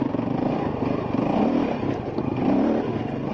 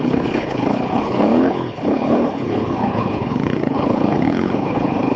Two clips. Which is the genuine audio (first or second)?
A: first